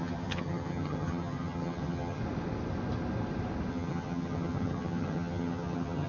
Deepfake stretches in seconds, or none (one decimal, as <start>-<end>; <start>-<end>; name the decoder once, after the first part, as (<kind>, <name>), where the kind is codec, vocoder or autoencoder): 0.0-2.2 (vocoder, HiFi-GAN); 3.7-6.1